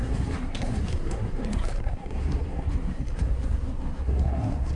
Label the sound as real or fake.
fake